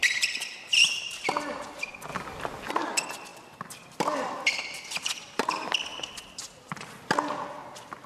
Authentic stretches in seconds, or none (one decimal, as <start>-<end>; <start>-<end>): 1.1-2.1; 2.7-3.3; 6.9-8.1